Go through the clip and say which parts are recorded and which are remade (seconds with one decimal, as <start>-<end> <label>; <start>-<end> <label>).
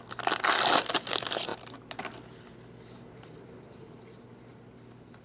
0.0-5.2 recorded